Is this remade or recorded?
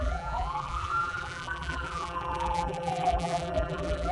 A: remade